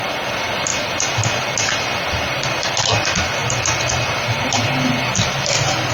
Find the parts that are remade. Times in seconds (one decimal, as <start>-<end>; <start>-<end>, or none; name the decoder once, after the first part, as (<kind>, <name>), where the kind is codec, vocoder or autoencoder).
none

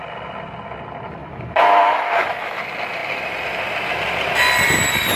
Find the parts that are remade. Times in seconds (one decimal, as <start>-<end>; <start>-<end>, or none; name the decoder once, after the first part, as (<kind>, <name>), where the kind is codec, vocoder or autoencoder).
1.2-2.6 (autoencoder, DAC-VAE)

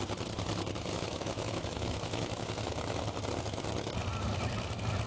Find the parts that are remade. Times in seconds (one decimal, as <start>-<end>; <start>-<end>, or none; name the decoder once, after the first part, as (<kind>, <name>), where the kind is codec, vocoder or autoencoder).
0.9-2.7 (autoencoder, DAC-VAE)

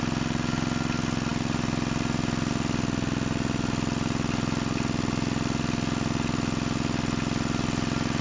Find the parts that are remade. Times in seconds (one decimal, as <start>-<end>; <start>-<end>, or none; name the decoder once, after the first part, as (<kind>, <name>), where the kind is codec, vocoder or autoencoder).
none

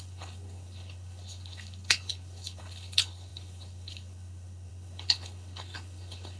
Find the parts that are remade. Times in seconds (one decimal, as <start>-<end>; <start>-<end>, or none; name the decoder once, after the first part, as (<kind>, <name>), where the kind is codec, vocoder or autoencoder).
0.0-6.4 (codec, HILCodec)